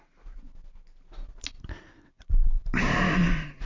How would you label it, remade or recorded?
recorded